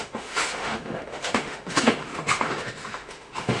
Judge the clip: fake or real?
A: fake